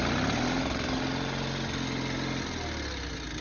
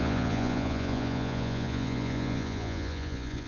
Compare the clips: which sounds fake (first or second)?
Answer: second